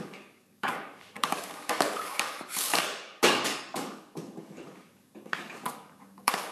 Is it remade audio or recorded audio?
remade